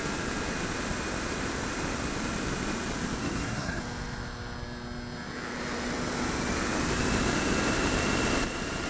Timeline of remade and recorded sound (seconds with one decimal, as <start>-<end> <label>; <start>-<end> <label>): 0.0-3.2 recorded; 3.2-3.8 remade; 3.8-8.9 recorded